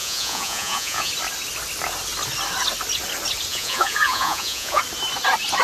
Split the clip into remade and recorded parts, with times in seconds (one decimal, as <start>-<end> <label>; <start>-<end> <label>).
0.0-1.1 remade; 1.1-3.5 recorded; 3.5-4.8 remade; 4.8-5.6 recorded